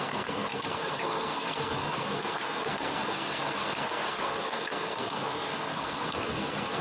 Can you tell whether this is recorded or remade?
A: remade